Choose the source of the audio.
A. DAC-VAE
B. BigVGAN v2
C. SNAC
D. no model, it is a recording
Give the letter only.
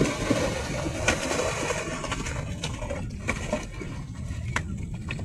D